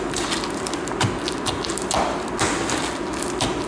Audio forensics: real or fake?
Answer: real